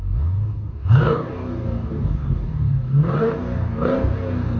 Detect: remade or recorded remade